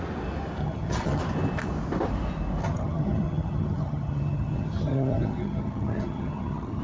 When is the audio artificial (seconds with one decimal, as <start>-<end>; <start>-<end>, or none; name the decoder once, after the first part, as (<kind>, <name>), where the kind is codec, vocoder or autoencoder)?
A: 0.6-1.2 (vocoder, HiFi-GAN); 2.6-6.8